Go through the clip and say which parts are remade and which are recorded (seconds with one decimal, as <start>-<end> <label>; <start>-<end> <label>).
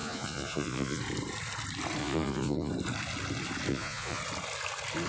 0.0-1.0 remade; 1.0-2.0 recorded; 2.0-2.7 remade; 2.7-3.7 recorded; 3.7-4.2 remade; 4.2-5.1 recorded